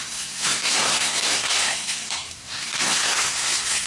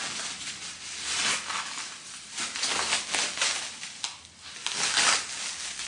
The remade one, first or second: first